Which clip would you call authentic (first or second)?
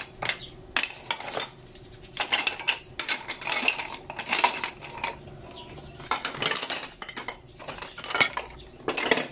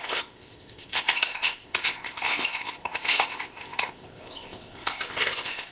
first